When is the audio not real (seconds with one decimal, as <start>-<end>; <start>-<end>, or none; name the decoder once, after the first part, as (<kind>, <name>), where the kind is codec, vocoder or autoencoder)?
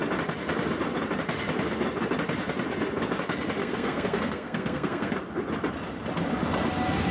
3.6-5.1 (codec, SNAC)